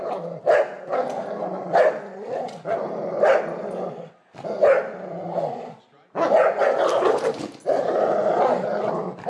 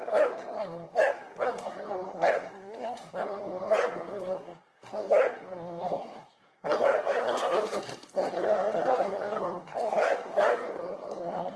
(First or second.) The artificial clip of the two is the second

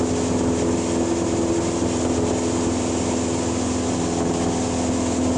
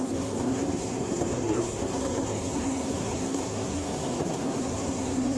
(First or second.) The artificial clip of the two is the second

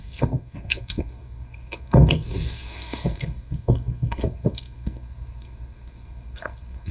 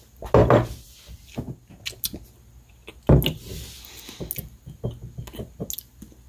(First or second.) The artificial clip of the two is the first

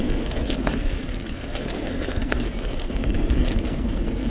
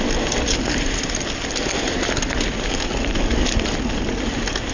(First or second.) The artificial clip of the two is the first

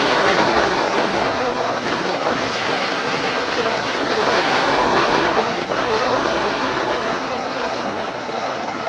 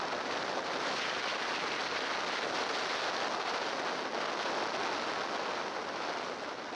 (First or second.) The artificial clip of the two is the first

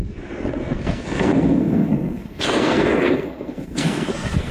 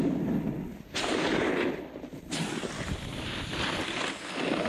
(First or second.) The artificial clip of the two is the first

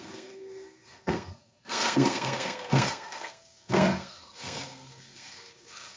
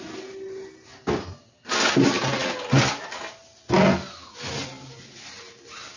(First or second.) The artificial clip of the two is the first